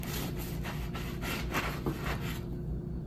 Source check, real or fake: real